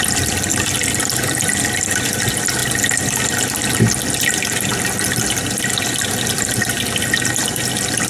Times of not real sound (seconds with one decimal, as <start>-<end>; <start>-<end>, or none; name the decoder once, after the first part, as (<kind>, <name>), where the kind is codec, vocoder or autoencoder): none